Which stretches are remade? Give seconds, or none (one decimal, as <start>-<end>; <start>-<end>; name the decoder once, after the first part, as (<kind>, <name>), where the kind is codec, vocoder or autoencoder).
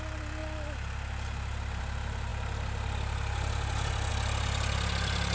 none